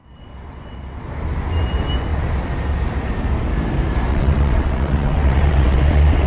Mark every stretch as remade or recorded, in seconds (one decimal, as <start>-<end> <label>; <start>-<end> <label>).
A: 0.0-1.1 remade; 1.1-4.1 recorded; 4.1-6.3 remade

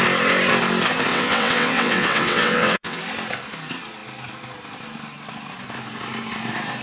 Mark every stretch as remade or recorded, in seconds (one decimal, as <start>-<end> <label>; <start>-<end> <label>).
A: 0.0-1.1 recorded; 1.1-3.0 remade; 3.0-6.8 recorded

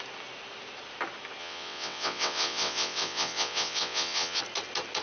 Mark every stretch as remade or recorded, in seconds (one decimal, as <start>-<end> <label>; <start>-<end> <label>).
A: 0.0-1.4 recorded; 1.4-4.4 remade; 4.4-5.0 recorded

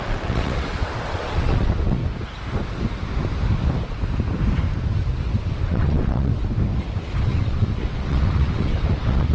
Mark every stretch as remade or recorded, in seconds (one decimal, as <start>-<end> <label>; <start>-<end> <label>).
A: 0.0-2.0 remade; 2.0-5.5 recorded; 5.5-6.3 remade; 6.3-7.2 recorded; 7.2-9.3 remade